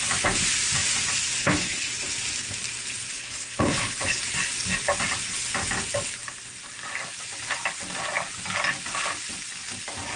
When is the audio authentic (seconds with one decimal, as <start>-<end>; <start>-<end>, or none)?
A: 0.0-1.4; 1.9-3.1; 4.2-10.2